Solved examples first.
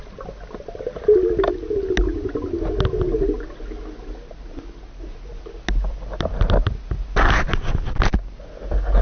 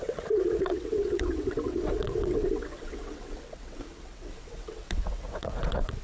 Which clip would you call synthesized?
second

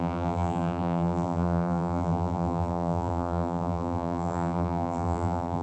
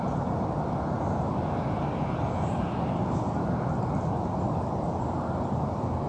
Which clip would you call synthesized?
first